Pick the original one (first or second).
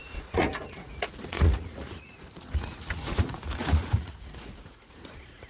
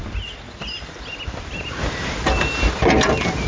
second